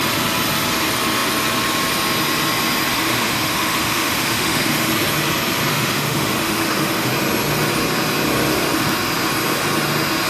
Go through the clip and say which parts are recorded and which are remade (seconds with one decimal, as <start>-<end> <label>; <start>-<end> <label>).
0.0-2.9 recorded; 2.9-4.9 remade; 4.9-5.7 recorded; 5.7-7.1 remade; 7.1-10.3 recorded